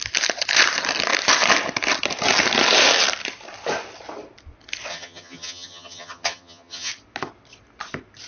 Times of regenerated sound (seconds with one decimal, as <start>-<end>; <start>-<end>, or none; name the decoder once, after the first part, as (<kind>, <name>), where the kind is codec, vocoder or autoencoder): 4.9-6.9 (vocoder, HiFi-GAN)